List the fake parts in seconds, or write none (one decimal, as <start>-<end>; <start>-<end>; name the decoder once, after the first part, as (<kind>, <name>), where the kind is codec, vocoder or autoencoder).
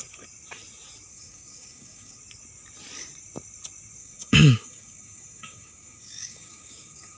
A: 1.1-2.2 (codec, DAC); 4.0-7.2